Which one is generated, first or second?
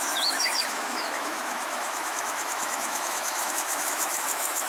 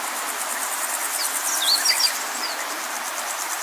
first